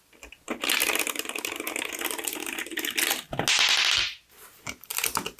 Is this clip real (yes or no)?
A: yes